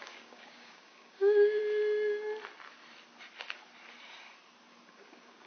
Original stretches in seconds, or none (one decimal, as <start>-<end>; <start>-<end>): 1.6-4.9